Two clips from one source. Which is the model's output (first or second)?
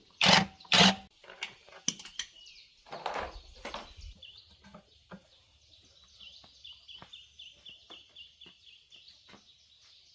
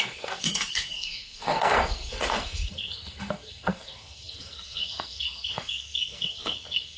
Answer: second